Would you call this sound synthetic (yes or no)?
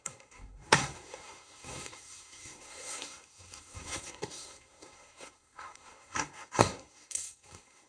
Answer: yes